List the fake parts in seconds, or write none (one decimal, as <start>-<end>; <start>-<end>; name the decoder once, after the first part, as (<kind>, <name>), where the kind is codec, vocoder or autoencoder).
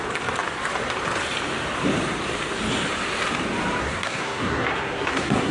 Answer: 3.8-5.5 (codec, SNAC)